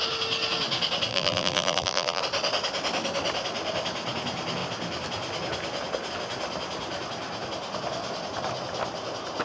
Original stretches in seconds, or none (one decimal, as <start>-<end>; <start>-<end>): 0.0-1.1; 2.2-9.4